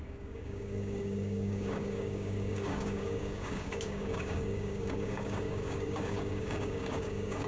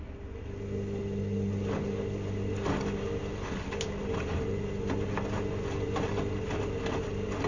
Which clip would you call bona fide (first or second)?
second